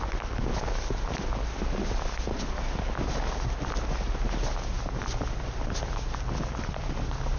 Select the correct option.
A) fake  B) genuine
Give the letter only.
B